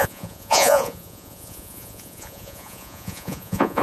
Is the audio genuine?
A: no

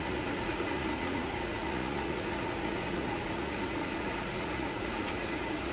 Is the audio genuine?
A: no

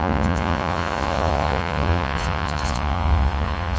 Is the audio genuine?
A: no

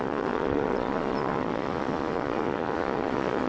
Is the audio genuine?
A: no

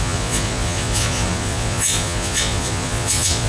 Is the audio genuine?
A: no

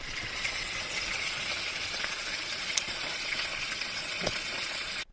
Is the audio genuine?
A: no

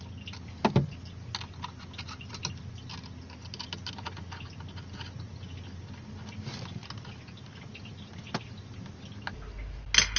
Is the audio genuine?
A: yes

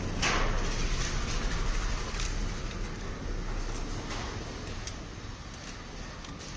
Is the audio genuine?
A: yes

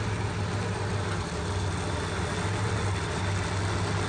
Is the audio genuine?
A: yes